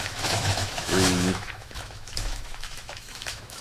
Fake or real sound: fake